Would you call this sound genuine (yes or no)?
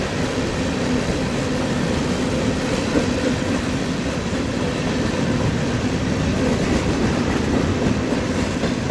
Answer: no